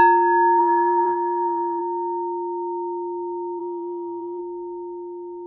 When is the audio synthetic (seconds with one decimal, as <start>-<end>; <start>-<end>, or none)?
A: 0.6-1.8; 3.6-4.4